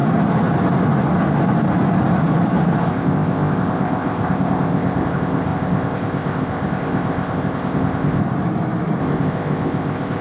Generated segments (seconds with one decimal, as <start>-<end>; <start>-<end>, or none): 2.9-8.2; 9.0-10.2